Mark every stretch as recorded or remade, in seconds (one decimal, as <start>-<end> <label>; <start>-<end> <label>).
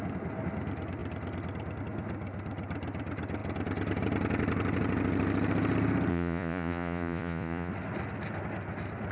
0.0-6.1 recorded; 6.1-7.7 remade; 7.7-9.1 recorded